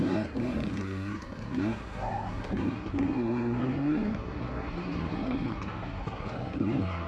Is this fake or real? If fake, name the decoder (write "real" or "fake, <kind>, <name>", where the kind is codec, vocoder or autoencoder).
fake, codec, SNAC